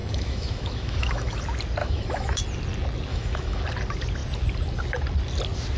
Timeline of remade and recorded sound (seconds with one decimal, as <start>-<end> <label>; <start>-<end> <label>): 0.0-1.4 remade; 1.4-1.8 recorded; 1.8-2.4 remade; 2.4-3.1 recorded; 3.1-3.6 remade; 3.6-5.8 recorded